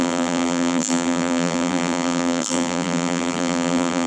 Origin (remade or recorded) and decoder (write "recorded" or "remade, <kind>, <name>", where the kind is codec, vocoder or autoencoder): remade, vocoder, BigVGAN v2